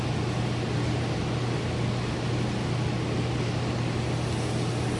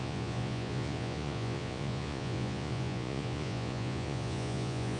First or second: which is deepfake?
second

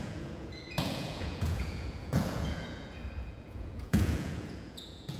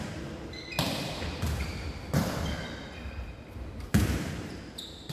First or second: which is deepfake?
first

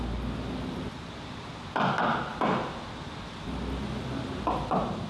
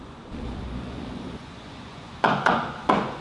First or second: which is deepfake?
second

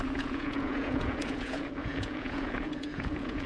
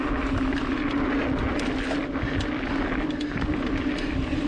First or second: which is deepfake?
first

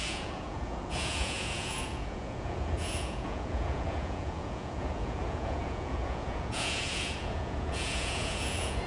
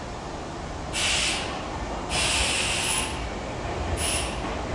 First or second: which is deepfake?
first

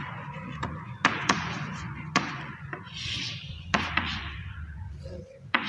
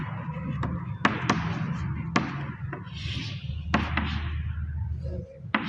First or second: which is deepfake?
first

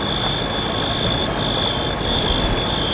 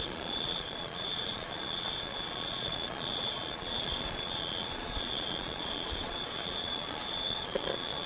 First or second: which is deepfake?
second